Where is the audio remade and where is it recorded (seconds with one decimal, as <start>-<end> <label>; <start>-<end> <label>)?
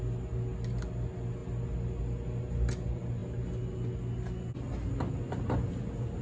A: 0.0-6.2 recorded